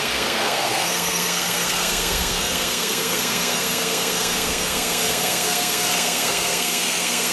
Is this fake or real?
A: fake